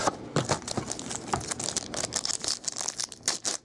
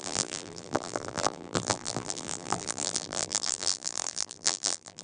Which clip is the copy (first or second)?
second